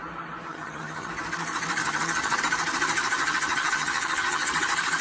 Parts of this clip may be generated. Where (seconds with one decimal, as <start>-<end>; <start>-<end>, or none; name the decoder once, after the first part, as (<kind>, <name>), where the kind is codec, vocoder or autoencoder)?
0.5-1.1 (vocoder, HiFi-GAN); 1.8-2.4; 3.2-4.5

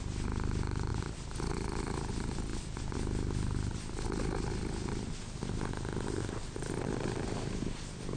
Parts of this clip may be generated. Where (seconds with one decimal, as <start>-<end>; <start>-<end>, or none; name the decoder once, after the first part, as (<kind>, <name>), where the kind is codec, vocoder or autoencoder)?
none

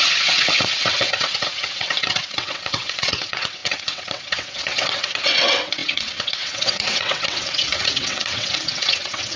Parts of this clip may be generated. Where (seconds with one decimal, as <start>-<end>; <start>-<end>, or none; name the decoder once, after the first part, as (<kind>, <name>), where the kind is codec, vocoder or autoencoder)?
0.0-9.4 (vocoder, WaveNeXt)